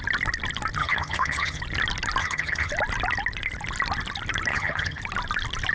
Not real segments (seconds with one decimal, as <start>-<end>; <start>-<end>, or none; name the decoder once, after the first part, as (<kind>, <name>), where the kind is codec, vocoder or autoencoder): 0.8-1.6 (vocoder, HiFi-GAN); 2.2-2.7; 4.5-5.0